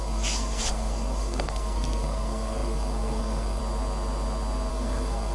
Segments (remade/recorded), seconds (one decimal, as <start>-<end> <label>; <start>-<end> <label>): 0.0-3.6 remade; 3.6-4.7 recorded; 4.7-5.3 remade